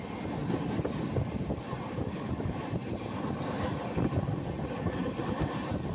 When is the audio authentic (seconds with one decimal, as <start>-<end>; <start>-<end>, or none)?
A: 0.0-0.4; 3.6-5.0